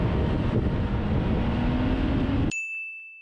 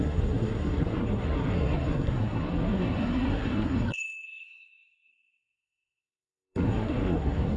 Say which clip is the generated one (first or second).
second